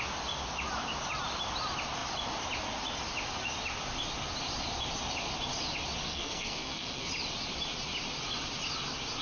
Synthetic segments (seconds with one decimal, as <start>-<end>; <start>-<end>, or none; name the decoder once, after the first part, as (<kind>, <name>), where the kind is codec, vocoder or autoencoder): 6.0-7.1 (codec, SNAC)